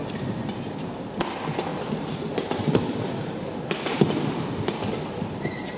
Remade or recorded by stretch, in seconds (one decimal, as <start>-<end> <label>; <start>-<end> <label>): 0.0-1.7 recorded; 1.7-5.2 remade; 5.2-5.8 recorded